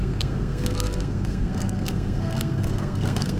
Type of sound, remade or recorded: remade